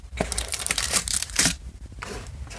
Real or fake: fake